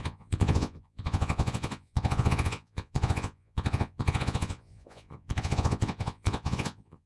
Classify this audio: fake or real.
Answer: fake